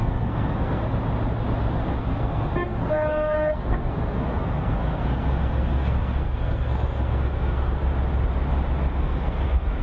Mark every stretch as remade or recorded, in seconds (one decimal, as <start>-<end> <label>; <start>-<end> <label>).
0.0-0.8 remade; 0.8-2.0 recorded; 2.0-7.8 remade; 7.8-9.0 recorded; 9.0-9.8 remade